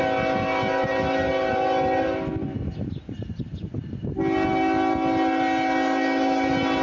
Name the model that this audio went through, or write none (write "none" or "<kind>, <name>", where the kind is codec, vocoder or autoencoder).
none